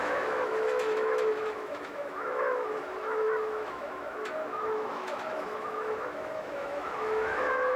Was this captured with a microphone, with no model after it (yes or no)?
no